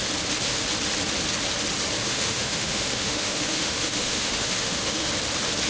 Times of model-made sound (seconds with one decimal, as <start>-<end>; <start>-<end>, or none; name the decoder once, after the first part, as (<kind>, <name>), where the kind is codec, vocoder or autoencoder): 2.0-5.1 (autoencoder, DAC-VAE)